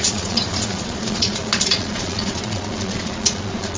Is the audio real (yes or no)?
no